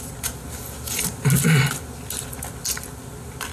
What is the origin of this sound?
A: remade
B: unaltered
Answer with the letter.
B